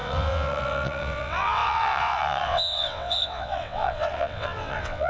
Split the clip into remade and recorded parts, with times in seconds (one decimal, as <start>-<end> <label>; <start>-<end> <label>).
0.0-5.1 remade